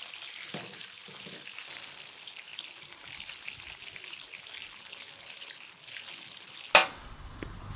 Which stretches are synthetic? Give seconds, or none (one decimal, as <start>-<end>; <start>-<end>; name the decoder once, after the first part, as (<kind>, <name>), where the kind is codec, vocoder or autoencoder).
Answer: none

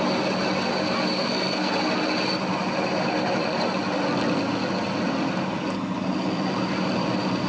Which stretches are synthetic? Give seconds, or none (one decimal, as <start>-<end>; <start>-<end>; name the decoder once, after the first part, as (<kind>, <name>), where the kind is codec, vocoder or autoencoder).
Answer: 1.2-1.7 (codec, SNAC)